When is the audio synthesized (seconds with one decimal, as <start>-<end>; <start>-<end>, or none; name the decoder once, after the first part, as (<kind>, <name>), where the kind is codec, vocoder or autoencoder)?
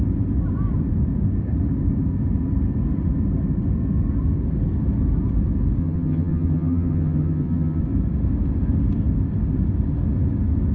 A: 5.8-7.8 (vocoder, HiFi-GAN)